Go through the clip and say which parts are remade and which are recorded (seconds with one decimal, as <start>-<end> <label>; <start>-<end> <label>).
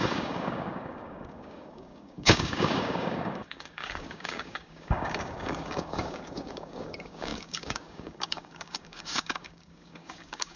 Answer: 0.0-10.6 remade